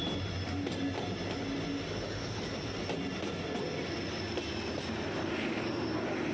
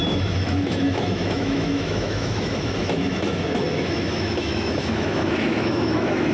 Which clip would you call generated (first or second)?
second